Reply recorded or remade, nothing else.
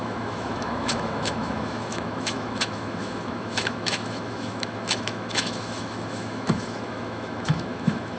remade